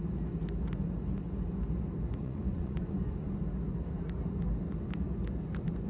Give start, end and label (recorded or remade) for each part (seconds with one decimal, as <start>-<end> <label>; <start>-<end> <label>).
0.0-2.2 recorded; 2.2-3.4 remade; 3.4-5.9 recorded